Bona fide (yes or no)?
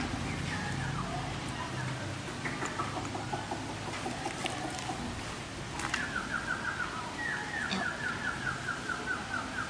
yes